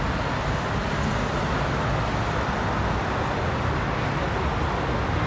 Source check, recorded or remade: recorded